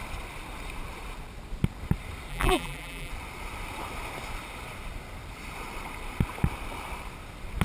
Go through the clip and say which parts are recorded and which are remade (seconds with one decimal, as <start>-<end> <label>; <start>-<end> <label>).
0.0-2.3 recorded; 2.3-3.1 remade; 3.1-7.6 recorded